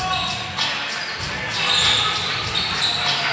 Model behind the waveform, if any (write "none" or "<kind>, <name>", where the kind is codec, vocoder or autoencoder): none